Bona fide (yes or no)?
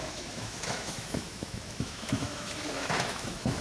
no